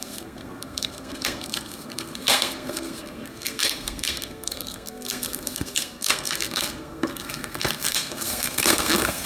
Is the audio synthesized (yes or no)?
yes